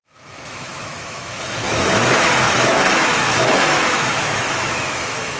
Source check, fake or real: fake